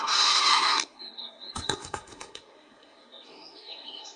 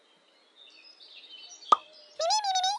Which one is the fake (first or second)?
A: first